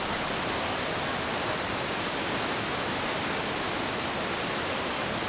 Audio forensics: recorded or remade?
recorded